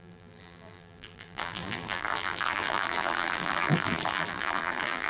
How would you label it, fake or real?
fake